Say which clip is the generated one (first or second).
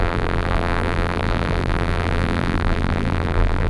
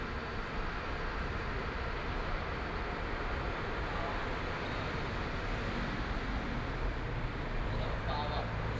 first